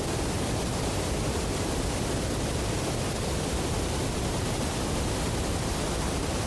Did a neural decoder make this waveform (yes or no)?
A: no